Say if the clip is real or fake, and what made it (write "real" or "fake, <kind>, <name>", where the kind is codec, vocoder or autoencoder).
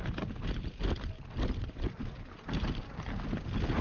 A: real